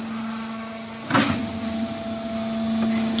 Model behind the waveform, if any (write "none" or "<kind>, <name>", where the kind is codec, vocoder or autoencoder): none